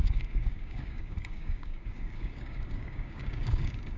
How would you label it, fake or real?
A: fake